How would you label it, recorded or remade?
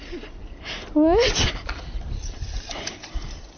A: recorded